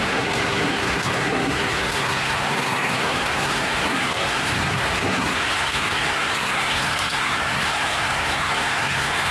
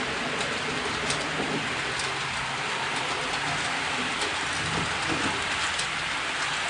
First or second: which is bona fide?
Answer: second